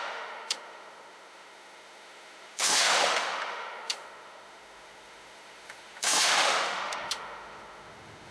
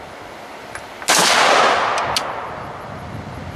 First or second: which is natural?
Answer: second